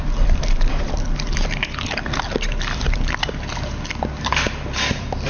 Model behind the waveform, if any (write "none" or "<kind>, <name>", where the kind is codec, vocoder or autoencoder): none